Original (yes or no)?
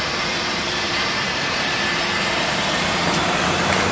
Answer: no